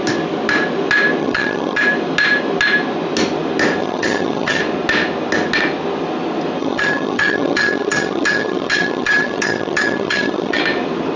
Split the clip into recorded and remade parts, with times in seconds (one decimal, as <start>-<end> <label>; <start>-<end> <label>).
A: 0.0-1.2 recorded; 1.2-1.8 remade; 1.8-3.8 recorded; 3.8-4.6 remade; 4.6-6.6 recorded; 6.6-10.6 remade; 10.6-11.2 recorded